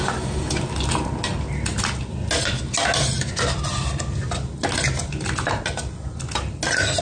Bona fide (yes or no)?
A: yes